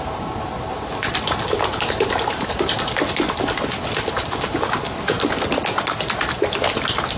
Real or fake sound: real